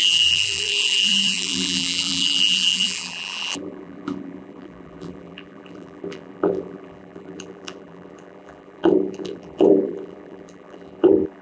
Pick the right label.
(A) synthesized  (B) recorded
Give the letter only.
A